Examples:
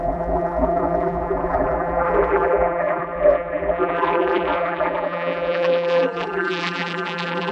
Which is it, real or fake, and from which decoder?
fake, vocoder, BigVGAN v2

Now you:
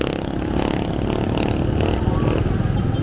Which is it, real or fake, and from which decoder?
real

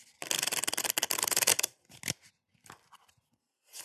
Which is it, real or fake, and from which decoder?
real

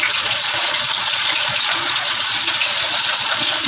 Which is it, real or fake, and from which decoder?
fake, vocoder, Vocos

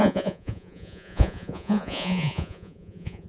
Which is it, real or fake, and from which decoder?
fake, vocoder, Vocos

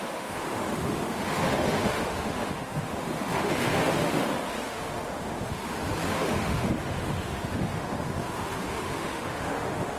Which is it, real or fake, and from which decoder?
fake, autoencoder, DAC-VAE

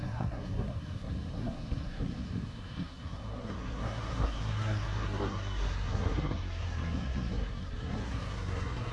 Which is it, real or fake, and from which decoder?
fake, codec, SNAC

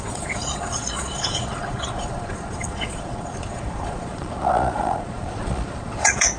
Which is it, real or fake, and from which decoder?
fake, vocoder, Vocos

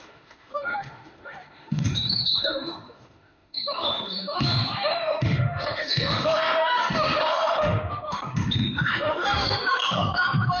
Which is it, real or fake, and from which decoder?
fake, autoencoder, DAC-VAE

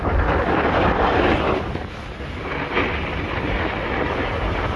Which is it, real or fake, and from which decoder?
real